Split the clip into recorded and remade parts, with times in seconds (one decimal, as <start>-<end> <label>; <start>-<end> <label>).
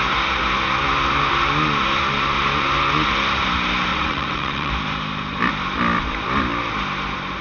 0.0-3.9 recorded; 3.9-4.7 remade; 4.7-7.4 recorded